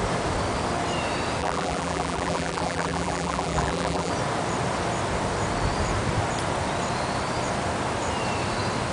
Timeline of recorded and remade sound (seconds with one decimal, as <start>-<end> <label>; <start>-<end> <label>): 0.0-1.4 recorded; 1.4-4.1 remade; 4.1-8.9 recorded